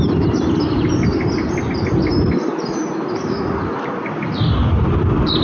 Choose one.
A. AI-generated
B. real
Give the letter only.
B